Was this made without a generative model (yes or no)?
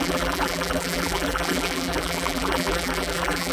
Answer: no